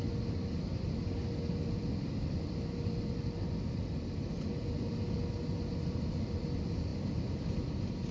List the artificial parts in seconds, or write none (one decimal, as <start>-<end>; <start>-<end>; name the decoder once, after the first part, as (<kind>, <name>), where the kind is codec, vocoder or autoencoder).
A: none